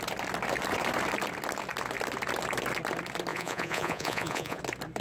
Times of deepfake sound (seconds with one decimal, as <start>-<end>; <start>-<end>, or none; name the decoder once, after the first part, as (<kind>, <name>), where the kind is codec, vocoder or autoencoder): 3.3-4.6 (vocoder, Vocos)